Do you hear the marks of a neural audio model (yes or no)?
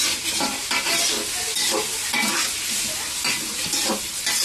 no